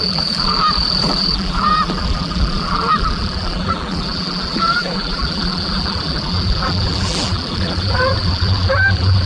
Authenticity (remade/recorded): remade